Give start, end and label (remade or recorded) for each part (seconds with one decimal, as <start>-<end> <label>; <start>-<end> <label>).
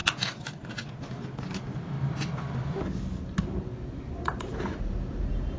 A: 0.0-3.4 recorded; 3.4-5.6 remade